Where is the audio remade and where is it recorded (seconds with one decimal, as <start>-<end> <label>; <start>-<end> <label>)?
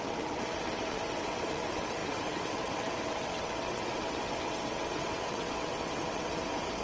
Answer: 0.0-6.8 remade